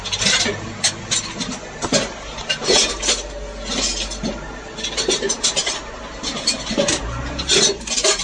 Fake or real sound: real